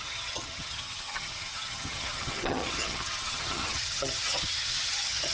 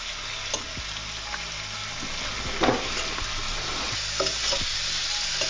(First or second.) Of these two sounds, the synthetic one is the first